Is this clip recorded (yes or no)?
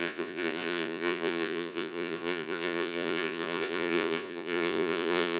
no